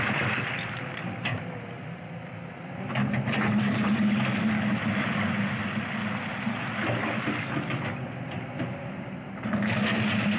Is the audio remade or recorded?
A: recorded